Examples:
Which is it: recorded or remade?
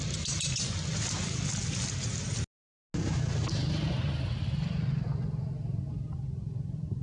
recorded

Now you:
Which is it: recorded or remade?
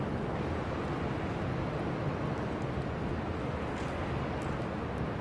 recorded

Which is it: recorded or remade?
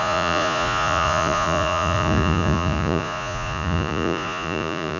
remade